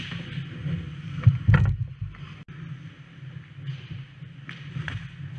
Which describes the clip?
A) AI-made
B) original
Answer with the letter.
B